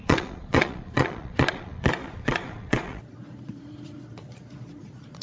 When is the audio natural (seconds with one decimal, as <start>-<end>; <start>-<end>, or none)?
none